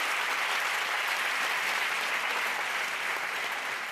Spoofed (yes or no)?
no